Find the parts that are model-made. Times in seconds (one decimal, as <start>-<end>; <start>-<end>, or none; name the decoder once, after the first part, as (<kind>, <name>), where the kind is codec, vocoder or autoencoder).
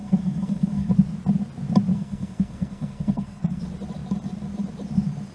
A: 0.0-0.9 (codec, SNAC); 1.9-3.6